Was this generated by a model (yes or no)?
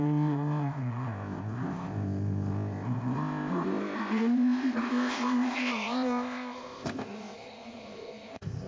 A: yes